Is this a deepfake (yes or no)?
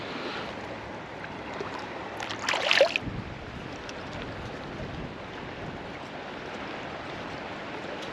no